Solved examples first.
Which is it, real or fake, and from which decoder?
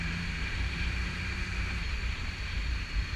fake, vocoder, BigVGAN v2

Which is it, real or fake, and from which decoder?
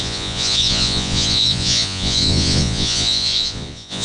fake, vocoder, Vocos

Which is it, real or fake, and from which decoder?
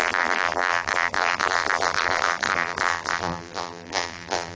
fake, vocoder, BigVGAN v2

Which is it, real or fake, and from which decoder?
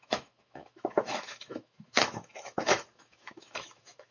fake, autoencoder, DAC-VAE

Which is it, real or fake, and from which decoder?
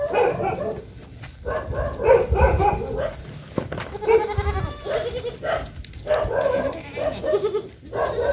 real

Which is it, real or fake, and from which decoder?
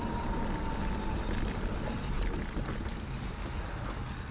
real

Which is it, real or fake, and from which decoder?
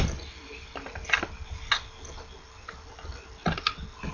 real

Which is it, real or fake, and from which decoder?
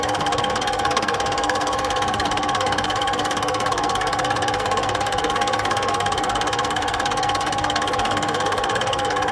fake, codec, SNAC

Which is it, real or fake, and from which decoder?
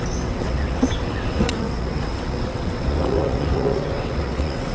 fake, vocoder, WaveNeXt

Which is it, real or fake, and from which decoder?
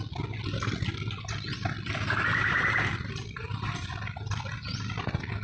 real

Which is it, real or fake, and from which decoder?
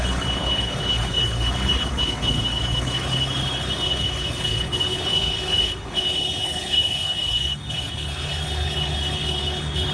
fake, codec, HILCodec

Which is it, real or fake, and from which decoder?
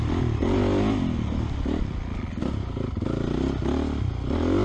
real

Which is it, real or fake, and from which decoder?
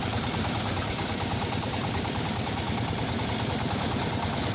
real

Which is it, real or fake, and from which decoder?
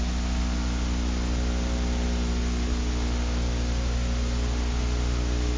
real